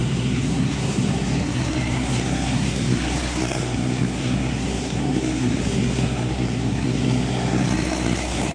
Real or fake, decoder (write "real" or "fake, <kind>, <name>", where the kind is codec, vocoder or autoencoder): fake, codec, SNAC